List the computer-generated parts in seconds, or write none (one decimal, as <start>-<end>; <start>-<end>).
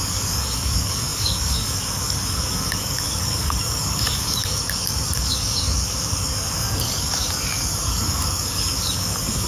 0.0-9.5